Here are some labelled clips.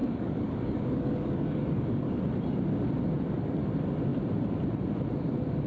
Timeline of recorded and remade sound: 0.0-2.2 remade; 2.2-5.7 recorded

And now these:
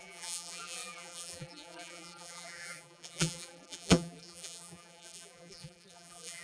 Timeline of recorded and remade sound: 0.0-6.4 remade

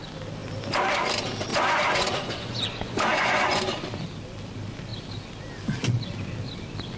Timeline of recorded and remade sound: 0.0-1.5 recorded; 1.5-3.6 remade; 3.6-7.0 recorded

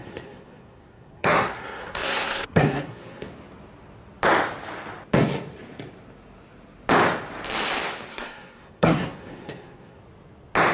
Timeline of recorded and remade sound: 0.0-3.3 remade; 3.3-8.1 recorded; 8.1-10.0 remade; 10.0-10.7 recorded

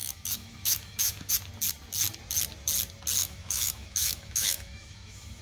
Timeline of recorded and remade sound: 0.0-1.3 remade; 1.3-3.2 recorded; 3.2-5.4 remade